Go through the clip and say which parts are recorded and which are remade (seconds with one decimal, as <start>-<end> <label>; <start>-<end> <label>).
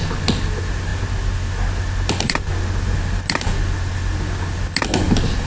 0.0-5.5 recorded